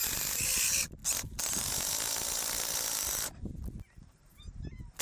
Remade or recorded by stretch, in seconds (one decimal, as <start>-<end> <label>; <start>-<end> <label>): 0.0-5.0 recorded